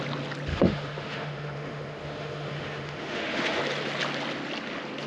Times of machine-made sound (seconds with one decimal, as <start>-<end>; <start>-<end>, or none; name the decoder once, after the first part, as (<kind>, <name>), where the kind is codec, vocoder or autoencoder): 0.5-3.6 (autoencoder, DAC-VAE)